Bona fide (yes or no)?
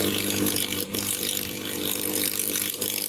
no